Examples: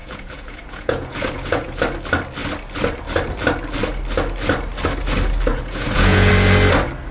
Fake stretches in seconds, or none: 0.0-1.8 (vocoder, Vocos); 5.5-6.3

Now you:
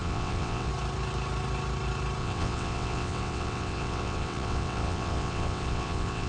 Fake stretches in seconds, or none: 0.0-0.7 (vocoder, WaveNeXt); 2.2-6.3

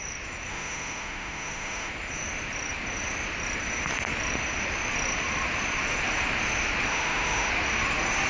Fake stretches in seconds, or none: 0.5-1.9 (autoencoder, DAC-VAE); 6.9-7.5